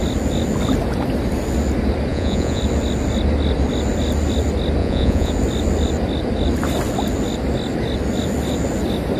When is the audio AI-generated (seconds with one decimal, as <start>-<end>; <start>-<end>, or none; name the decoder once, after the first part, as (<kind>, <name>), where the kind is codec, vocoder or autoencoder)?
2.1-2.6 (vocoder, Vocos); 4.8-5.3